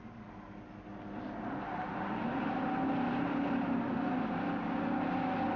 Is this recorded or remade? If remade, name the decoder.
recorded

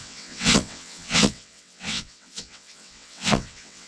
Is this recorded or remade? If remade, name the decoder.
remade, vocoder, WaveNeXt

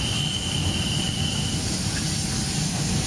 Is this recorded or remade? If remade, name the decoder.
recorded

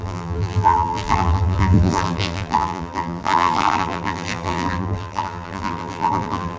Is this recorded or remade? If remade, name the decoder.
remade, vocoder, BigVGAN v2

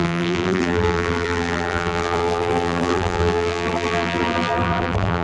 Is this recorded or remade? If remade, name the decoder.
remade, vocoder, BigVGAN v2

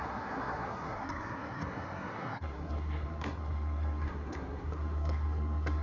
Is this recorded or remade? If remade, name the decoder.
remade, codec, SNAC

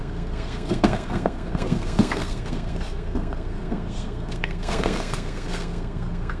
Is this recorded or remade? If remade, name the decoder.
remade, codec, SNAC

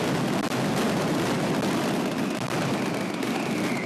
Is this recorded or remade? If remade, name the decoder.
recorded